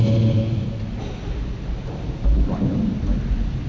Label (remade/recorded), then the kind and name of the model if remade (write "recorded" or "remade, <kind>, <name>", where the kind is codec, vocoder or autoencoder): recorded